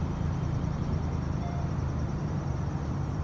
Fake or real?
fake